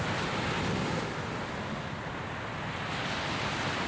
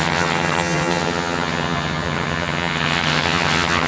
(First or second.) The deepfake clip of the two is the second